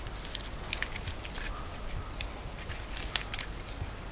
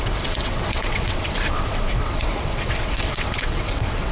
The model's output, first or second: second